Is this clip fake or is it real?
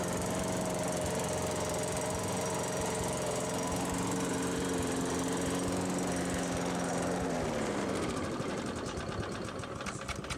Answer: real